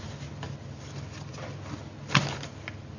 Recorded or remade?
recorded